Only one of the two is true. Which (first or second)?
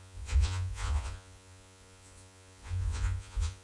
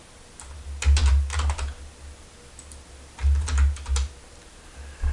second